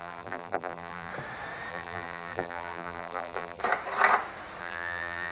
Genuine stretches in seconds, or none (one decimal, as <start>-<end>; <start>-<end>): 1.1-1.7; 3.6-4.6